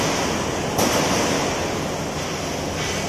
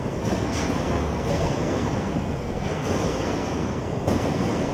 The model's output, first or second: second